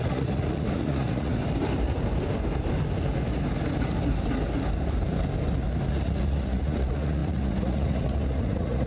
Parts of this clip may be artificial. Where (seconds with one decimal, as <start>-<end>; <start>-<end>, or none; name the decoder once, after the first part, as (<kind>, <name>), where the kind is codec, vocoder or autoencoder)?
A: 0.0-1.4 (vocoder, Vocos); 5.9-8.9